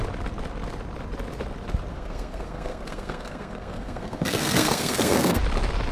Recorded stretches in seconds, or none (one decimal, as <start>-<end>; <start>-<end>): 0.0-1.9; 5.4-5.9